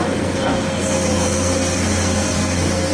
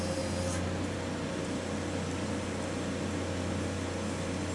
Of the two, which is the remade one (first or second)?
first